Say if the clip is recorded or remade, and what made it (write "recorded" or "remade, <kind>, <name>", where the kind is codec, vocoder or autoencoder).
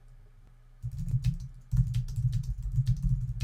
recorded